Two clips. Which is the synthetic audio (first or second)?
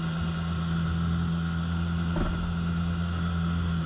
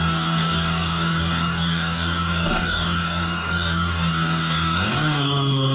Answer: second